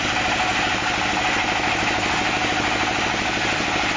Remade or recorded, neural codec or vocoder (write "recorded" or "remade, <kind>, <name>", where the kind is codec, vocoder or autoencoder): recorded